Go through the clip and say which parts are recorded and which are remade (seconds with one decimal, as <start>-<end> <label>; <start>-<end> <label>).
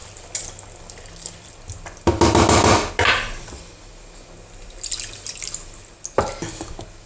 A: 0.0-7.1 recorded